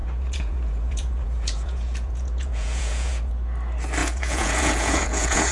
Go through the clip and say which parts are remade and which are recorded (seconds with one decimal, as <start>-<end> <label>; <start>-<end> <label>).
0.0-3.3 remade; 3.3-4.0 recorded; 4.0-5.5 remade